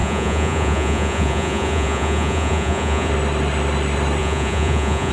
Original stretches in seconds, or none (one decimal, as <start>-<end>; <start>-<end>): 3.1-4.2